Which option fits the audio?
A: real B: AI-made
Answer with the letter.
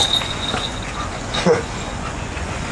B